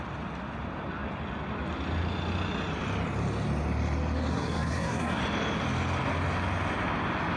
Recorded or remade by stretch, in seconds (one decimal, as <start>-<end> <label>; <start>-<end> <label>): 0.0-4.3 recorded; 4.3-5.2 remade; 5.2-7.4 recorded